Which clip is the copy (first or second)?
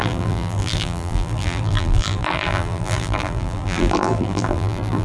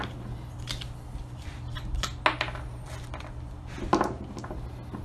first